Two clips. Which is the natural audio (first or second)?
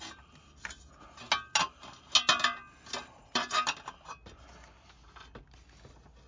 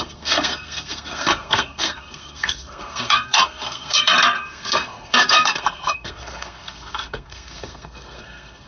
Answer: first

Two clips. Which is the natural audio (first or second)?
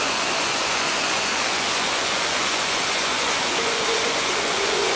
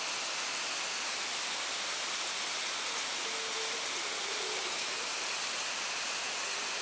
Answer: second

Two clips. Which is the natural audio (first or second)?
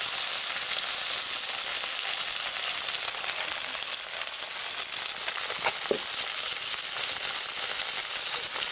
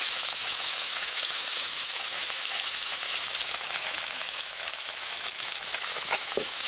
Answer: first